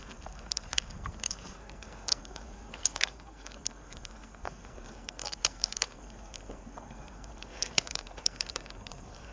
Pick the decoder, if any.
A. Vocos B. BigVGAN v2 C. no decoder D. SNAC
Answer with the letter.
D